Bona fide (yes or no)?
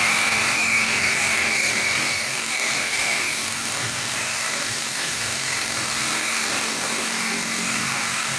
no